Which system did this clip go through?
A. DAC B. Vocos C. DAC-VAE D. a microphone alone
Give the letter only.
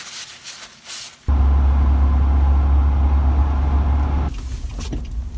D